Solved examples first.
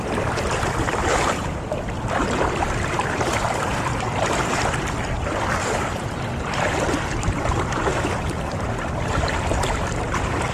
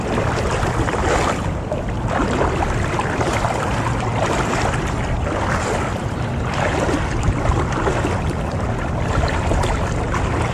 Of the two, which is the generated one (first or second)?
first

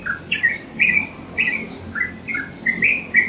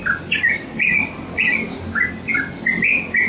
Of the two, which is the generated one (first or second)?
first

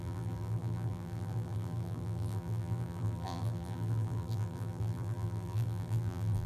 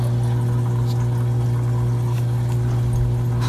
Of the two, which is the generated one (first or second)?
first